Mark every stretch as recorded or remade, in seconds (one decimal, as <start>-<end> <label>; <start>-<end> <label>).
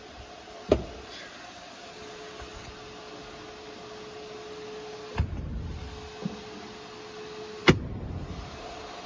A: 0.0-7.6 recorded; 7.6-9.1 remade